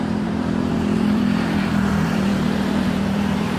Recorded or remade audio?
remade